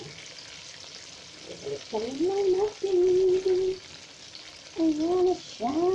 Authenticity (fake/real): real